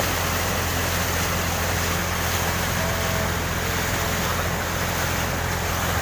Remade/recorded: recorded